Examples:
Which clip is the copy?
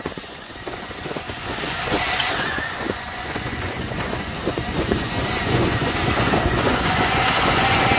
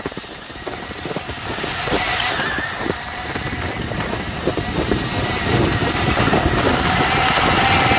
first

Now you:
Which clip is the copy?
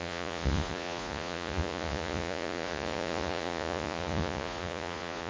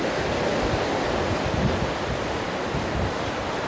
first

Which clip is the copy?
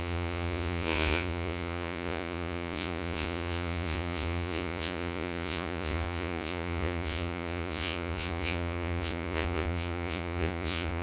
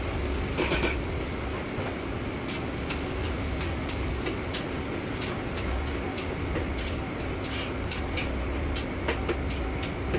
first